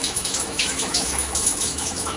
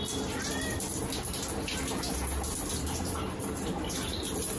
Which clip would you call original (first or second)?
second